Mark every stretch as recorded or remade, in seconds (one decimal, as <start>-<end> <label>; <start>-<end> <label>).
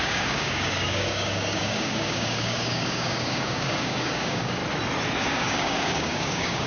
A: 0.0-4.6 remade; 4.6-5.2 recorded; 5.2-6.7 remade